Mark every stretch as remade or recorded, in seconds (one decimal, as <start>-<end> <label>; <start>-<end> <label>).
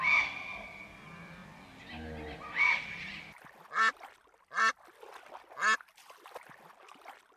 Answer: 0.0-7.4 recorded